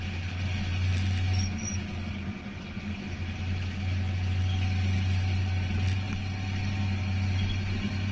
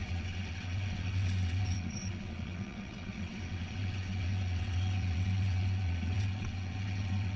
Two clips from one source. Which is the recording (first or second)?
first